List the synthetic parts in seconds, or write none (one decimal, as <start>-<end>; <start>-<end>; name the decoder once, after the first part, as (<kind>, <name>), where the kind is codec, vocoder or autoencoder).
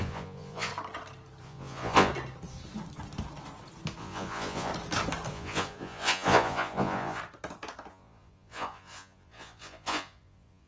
0.0-0.7 (vocoder, Vocos); 1.4-2.1; 4.0-4.7; 5.3-7.2; 7.9-10.7